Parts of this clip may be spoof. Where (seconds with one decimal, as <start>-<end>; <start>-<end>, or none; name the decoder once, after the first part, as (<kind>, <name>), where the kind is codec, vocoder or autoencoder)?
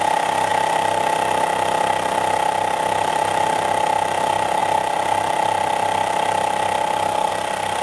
none